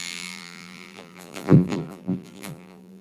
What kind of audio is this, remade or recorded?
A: remade